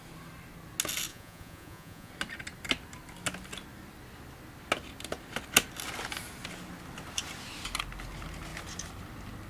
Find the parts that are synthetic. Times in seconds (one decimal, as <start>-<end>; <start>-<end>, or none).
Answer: 1.1-2.1